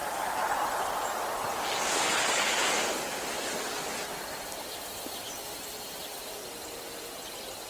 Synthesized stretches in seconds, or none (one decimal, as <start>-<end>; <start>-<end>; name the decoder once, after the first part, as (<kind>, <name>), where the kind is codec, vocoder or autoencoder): 5.4-6.1 (vocoder, BigVGAN v2)